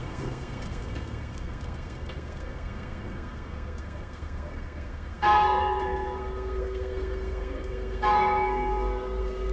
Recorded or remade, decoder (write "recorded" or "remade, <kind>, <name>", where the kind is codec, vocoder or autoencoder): remade, codec, SNAC